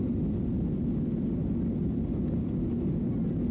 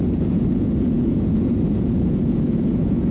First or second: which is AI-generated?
second